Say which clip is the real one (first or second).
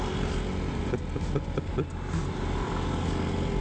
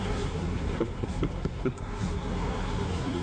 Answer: first